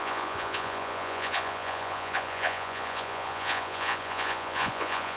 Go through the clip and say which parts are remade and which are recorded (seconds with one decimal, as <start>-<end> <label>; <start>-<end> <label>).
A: 0.0-5.2 remade